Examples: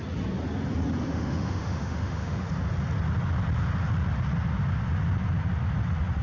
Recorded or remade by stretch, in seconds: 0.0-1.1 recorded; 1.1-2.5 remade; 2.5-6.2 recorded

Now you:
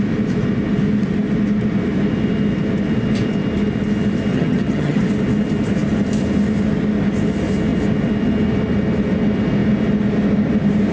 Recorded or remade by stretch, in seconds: 0.0-4.3 recorded; 4.3-5.0 remade; 5.0-10.9 recorded

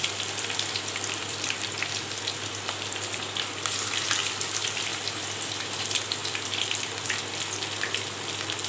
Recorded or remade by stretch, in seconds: 0.0-6.2 remade; 6.2-8.7 recorded

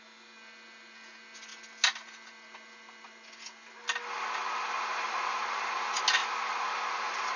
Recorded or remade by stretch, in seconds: 0.0-7.4 recorded

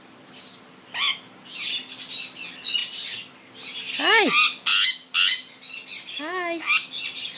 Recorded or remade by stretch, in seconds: 0.0-7.4 recorded